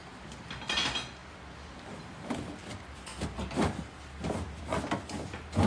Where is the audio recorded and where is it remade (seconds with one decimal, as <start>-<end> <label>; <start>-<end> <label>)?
0.0-5.7 recorded